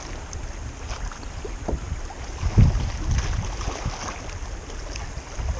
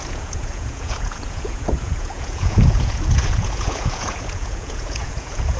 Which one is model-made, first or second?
second